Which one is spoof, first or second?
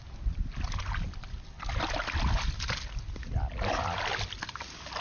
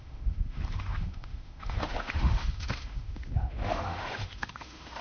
second